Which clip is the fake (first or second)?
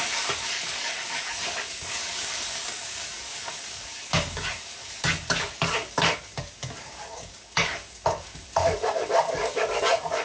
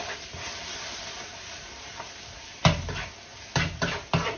first